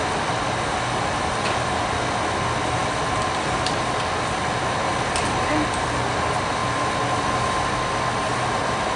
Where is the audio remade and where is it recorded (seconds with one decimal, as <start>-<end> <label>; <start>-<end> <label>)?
0.0-9.0 recorded